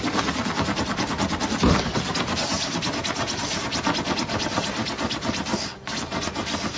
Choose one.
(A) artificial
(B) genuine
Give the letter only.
B